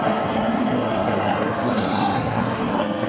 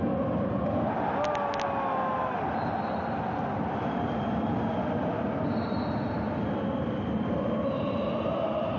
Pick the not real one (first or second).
first